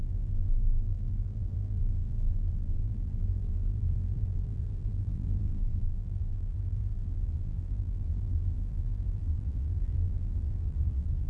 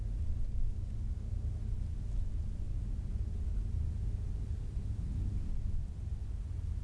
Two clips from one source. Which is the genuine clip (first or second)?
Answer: second